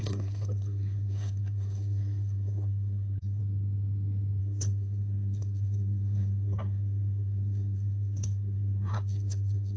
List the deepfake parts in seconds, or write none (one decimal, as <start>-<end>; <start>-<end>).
0.0-3.4; 4.4-9.8